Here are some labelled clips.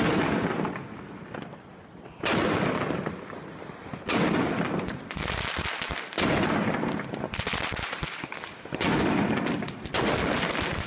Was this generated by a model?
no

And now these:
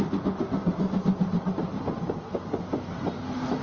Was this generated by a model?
no